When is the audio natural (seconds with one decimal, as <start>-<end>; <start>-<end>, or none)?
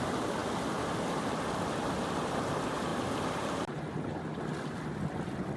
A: 0.0-5.6